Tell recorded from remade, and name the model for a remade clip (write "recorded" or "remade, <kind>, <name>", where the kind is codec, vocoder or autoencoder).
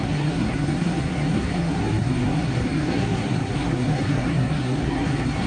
remade, codec, SNAC